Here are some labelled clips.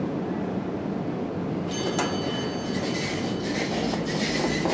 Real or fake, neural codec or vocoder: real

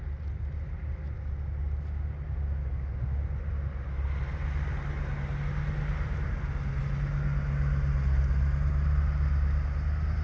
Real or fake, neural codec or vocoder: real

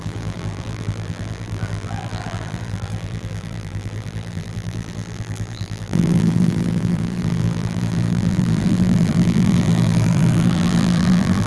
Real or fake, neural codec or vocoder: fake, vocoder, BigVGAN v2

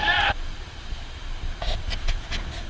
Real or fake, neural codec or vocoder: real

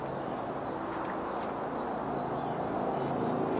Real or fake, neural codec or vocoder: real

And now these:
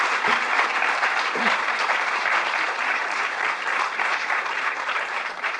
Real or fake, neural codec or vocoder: fake, vocoder, BigVGAN v2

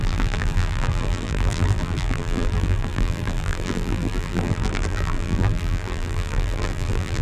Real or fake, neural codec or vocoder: fake, vocoder, BigVGAN v2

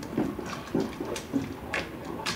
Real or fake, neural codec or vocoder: real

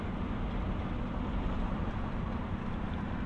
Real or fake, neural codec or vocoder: real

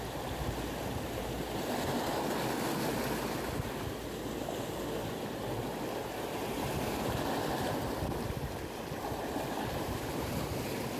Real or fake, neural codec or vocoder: real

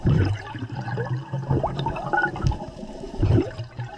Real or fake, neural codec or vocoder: fake, vocoder, BigVGAN v2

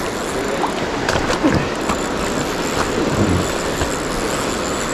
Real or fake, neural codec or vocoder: real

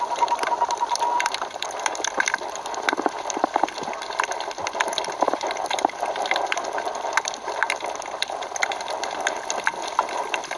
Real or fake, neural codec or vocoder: fake, vocoder, BigVGAN v2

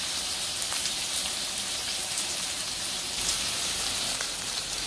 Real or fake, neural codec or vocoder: fake, vocoder, BigVGAN v2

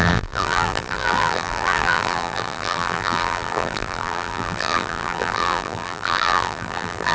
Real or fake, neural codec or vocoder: fake, vocoder, BigVGAN v2